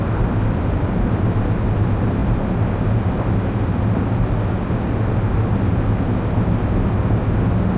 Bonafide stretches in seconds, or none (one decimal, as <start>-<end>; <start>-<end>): 0.0-7.8